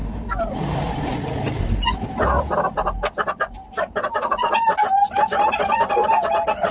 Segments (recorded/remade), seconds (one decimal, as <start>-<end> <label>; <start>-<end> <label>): 0.0-1.6 remade; 1.6-6.7 recorded